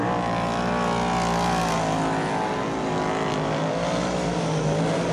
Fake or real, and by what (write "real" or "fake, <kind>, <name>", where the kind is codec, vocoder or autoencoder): real